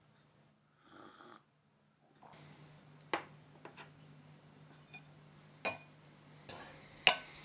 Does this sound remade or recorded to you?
recorded